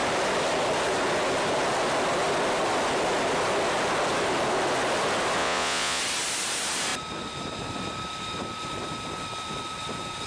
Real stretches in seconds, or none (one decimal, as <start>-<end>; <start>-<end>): 0.0-5.4; 6.0-10.3